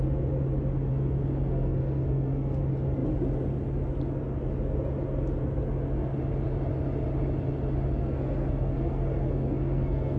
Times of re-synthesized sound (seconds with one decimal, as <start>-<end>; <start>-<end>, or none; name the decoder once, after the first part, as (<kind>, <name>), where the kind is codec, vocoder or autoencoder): 0.9-2.6 (codec, SNAC); 8.0-10.2